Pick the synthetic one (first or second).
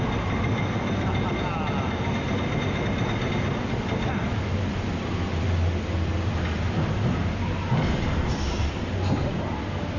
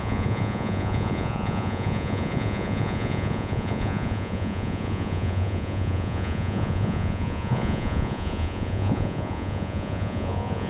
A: second